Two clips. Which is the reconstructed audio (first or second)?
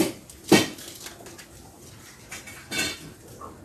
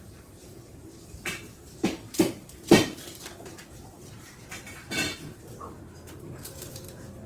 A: second